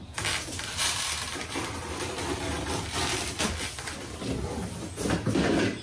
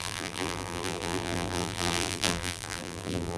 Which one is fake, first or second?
second